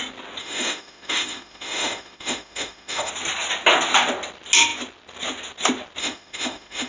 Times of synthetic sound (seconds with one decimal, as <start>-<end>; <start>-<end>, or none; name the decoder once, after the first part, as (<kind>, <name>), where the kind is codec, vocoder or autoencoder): 0.4-3.1 (autoencoder, DAC-VAE); 6.0-6.9